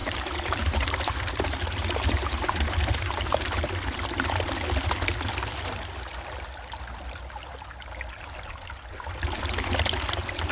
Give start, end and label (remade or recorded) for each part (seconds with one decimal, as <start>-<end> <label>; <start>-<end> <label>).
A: 0.0-4.5 remade; 4.5-10.5 recorded